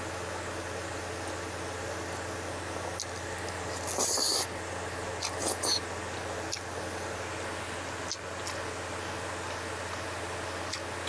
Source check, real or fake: real